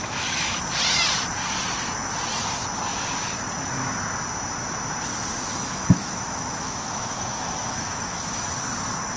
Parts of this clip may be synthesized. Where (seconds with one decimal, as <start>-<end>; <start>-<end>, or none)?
0.0-0.6; 5.5-8.5